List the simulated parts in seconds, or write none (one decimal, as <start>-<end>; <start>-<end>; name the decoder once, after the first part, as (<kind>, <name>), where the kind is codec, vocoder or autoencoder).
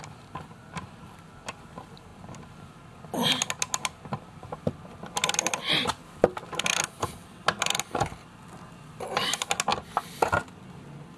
none